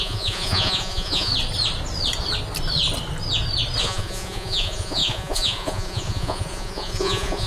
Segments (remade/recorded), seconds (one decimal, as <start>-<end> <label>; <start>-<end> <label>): 0.0-1.3 remade; 1.3-3.8 recorded; 3.8-7.5 remade